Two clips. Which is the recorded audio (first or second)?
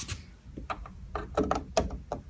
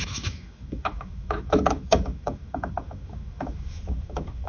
first